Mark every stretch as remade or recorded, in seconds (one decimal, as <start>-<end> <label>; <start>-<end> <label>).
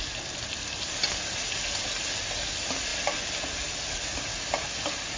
0.0-5.2 recorded